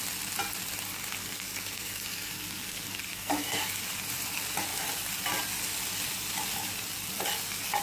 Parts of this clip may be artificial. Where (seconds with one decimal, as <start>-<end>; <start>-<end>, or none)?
1.2-3.8